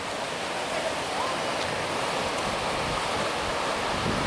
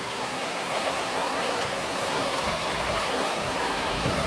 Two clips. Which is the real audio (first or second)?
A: first